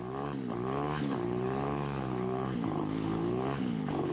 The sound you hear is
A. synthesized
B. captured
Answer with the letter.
A